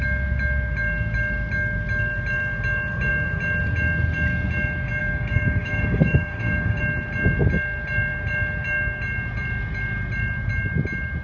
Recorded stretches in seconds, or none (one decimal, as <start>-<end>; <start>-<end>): 0.0-5.0; 6.8-11.2